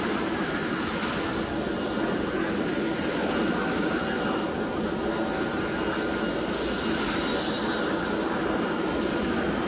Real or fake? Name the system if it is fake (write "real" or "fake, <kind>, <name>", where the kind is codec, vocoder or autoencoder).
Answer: real